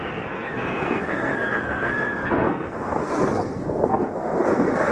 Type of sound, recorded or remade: remade